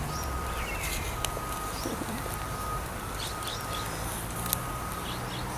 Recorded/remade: recorded